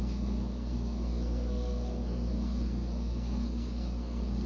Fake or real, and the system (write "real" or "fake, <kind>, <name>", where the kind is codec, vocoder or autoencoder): fake, codec, SNAC